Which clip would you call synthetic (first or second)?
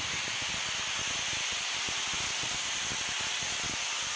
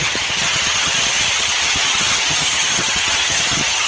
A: second